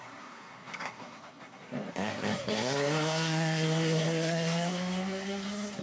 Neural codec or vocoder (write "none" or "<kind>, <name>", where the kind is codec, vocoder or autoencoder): codec, SNAC